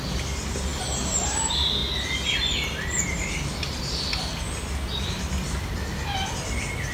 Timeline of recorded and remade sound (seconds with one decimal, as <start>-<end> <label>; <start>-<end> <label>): 0.0-6.9 recorded